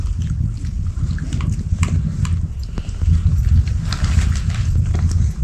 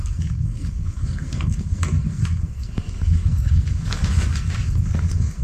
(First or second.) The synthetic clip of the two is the second